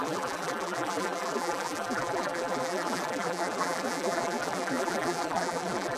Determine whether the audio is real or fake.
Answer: fake